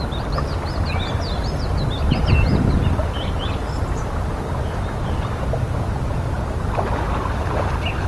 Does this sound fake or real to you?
real